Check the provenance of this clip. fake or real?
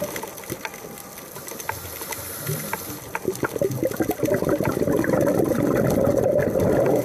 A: real